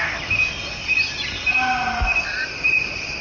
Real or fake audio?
real